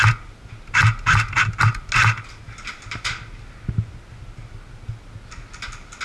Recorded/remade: recorded